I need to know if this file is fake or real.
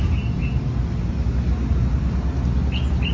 real